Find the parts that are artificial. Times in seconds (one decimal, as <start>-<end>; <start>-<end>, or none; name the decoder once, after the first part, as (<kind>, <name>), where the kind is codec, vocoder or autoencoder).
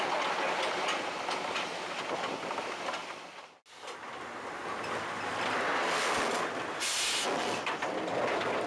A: none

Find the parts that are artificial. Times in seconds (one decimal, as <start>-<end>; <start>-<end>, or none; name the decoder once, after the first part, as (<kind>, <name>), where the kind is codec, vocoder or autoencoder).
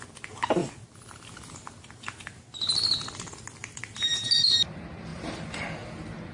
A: none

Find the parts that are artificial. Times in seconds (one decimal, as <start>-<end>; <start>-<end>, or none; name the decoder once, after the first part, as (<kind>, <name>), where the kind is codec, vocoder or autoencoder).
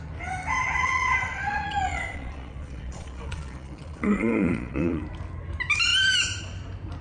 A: 0.8-5.0 (vocoder, Vocos)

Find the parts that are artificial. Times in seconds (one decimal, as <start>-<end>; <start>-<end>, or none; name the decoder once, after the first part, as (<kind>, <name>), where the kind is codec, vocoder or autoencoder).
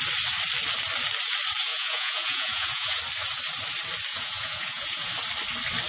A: 1.7-3.0 (vocoder, Vocos); 4.1-5.1